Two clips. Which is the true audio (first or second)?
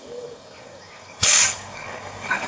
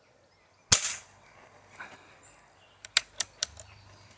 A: second